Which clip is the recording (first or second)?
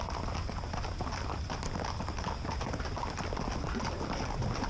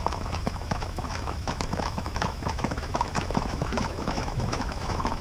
first